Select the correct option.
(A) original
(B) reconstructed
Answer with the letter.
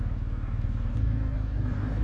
B